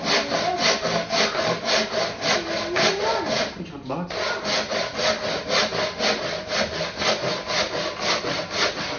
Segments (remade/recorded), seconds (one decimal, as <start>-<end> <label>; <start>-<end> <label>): 0.0-9.0 recorded

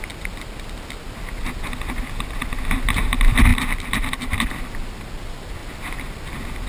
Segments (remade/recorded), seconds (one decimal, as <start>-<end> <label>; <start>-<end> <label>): 0.0-6.7 recorded

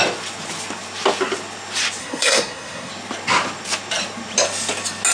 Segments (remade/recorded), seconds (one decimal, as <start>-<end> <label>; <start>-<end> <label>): 0.0-2.0 recorded; 2.0-2.9 remade; 2.9-5.1 recorded

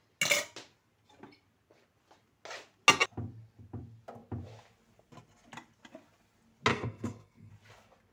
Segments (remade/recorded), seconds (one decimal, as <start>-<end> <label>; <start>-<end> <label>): 0.0-6.7 recorded; 6.7-7.5 remade; 7.5-8.1 recorded

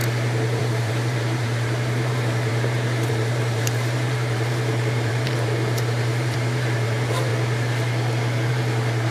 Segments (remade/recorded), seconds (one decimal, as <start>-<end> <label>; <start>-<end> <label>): 0.0-0.6 recorded; 0.6-7.3 remade; 7.3-8.5 recorded; 8.5-9.1 remade